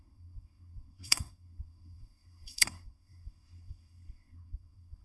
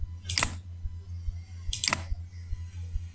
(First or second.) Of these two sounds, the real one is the second